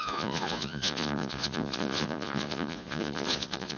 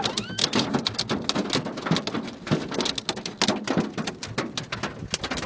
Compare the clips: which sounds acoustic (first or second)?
second